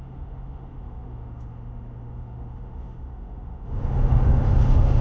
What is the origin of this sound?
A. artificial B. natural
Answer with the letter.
A